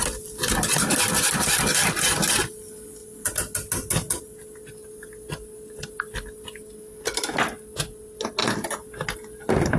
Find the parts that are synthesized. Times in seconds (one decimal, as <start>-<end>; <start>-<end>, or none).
none